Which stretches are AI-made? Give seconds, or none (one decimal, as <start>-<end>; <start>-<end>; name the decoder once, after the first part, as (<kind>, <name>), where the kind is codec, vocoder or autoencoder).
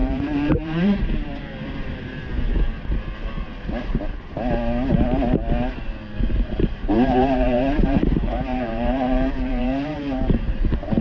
0.0-2.2 (vocoder, BigVGAN v2); 6.3-11.0